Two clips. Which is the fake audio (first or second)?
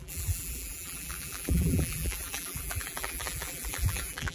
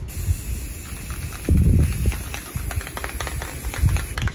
first